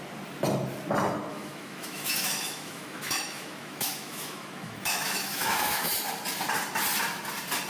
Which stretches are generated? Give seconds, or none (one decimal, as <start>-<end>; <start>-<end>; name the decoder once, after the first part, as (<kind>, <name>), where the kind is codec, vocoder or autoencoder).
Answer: 1.3-5.9 (autoencoder, DAC-VAE)